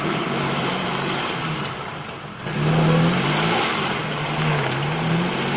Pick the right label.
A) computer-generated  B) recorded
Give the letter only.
A